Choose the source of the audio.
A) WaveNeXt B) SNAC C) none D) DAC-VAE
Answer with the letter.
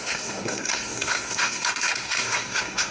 B